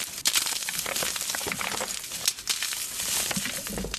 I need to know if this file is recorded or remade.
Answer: recorded